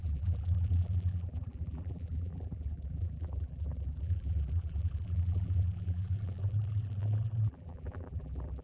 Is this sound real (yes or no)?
no